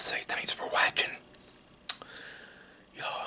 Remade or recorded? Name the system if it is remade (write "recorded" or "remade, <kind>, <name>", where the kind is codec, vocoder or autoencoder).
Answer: recorded